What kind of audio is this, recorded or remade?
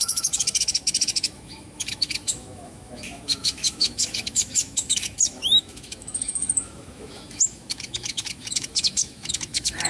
remade